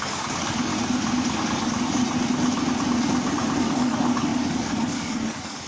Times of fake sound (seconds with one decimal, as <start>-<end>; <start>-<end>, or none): 0.0-0.7; 1.3-2.0; 3.6-5.7